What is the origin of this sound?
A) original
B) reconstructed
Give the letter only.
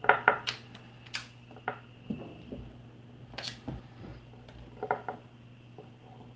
A